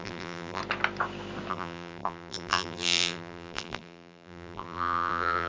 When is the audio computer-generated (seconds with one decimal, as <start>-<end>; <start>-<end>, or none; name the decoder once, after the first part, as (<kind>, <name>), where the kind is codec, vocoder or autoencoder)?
0.0-0.6 (vocoder, BigVGAN v2); 1.5-5.5